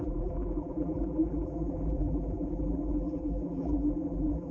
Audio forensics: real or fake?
fake